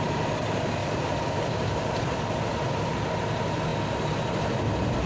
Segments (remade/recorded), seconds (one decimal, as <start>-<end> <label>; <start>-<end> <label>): 0.0-0.8 recorded; 0.8-3.0 remade; 3.0-5.1 recorded